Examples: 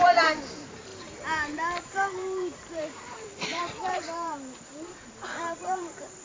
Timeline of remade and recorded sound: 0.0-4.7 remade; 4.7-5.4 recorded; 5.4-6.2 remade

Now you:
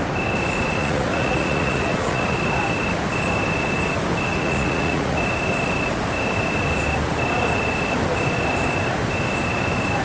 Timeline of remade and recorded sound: 0.0-0.8 recorded; 0.8-2.4 remade; 2.4-4.3 recorded; 4.3-5.2 remade; 5.2-10.0 recorded